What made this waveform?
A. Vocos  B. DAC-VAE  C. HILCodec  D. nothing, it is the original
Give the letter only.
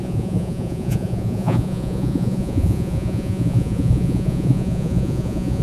A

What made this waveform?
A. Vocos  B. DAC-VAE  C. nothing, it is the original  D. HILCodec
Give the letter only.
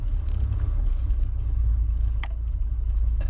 D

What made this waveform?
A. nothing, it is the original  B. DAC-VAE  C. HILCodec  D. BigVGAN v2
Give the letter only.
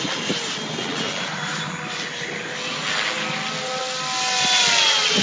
A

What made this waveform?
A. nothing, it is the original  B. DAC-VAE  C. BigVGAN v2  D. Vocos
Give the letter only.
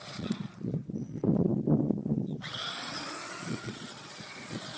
D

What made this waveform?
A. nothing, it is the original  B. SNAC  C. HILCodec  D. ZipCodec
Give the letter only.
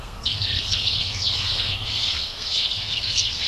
B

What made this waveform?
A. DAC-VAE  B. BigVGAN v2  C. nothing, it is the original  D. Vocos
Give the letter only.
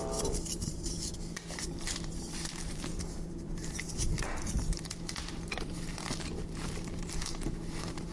B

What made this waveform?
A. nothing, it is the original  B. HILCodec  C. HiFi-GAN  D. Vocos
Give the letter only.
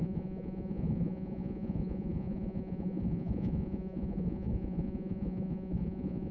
D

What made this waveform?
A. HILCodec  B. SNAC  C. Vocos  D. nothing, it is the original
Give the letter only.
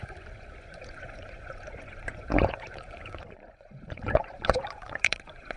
C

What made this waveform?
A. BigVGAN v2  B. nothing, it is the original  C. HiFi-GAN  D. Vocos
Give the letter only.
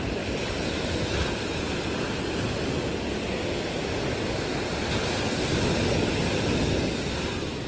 B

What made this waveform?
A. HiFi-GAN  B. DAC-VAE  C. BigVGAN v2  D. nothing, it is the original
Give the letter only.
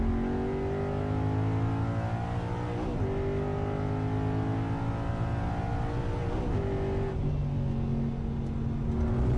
D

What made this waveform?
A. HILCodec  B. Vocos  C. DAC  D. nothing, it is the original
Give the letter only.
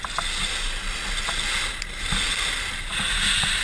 D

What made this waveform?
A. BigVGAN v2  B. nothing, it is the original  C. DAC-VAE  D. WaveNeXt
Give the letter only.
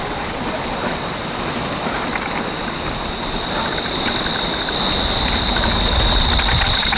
B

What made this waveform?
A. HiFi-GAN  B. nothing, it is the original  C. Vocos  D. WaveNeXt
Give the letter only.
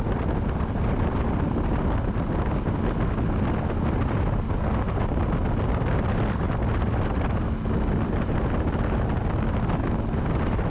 B